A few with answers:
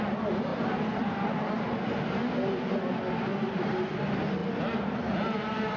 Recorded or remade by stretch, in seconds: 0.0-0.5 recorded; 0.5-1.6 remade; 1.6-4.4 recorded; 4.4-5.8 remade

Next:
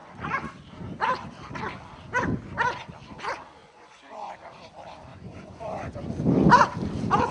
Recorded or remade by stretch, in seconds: 0.0-0.7 remade; 0.7-3.6 recorded; 3.6-4.3 remade; 4.3-5.1 recorded; 5.1-6.1 remade; 6.1-7.3 recorded

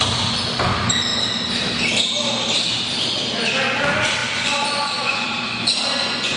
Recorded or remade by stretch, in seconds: 0.0-4.2 recorded; 4.2-6.4 remade

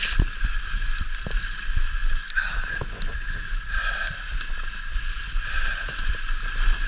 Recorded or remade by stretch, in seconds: 0.0-6.9 recorded

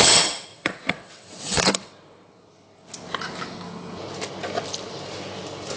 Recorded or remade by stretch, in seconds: 0.0-1.9 remade; 1.9-5.8 recorded

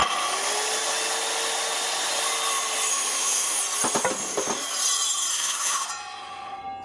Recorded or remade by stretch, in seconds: 0.0-2.9 recorded; 2.9-3.6 remade; 3.6-5.3 recorded; 5.3-5.9 remade; 5.9-6.8 recorded